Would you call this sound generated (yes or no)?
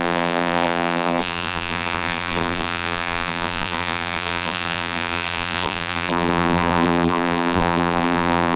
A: yes